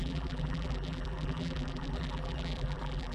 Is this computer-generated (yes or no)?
yes